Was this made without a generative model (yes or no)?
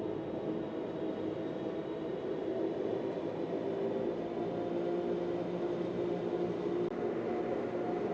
yes